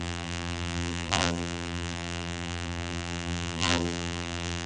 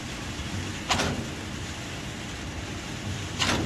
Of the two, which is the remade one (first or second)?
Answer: first